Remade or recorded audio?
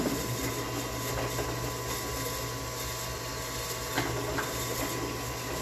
recorded